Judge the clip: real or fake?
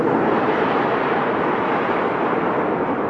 real